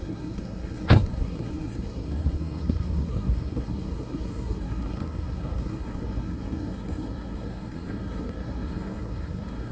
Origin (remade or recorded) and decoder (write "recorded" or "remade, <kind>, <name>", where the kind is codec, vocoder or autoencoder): remade, codec, SNAC